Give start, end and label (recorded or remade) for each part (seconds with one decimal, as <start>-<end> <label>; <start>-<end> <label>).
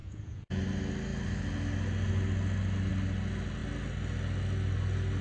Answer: 0.0-0.6 remade; 0.6-5.2 recorded